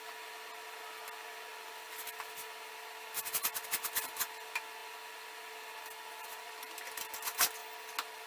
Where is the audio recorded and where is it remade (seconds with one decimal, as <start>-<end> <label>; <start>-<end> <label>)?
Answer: 0.0-8.3 recorded